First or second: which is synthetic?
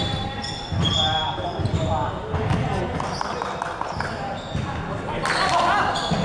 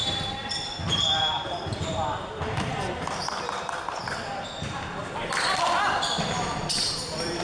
second